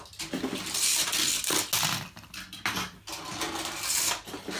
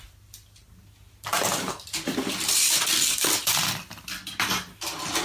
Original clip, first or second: first